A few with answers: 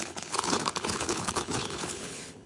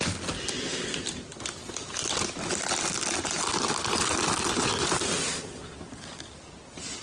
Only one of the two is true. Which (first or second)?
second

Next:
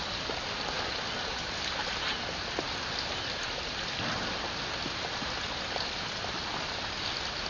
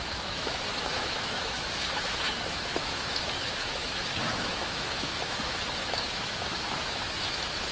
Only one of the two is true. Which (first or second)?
first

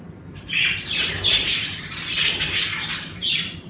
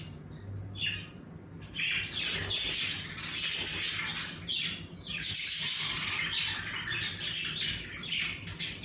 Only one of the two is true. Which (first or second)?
second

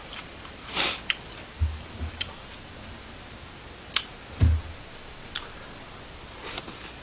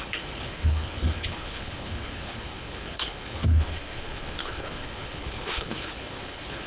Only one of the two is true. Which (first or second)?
first